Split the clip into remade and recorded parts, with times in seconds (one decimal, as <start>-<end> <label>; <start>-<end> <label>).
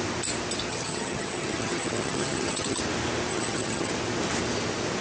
0.0-0.7 recorded; 0.7-2.8 remade; 2.8-3.3 recorded; 3.3-3.9 remade; 3.9-5.0 recorded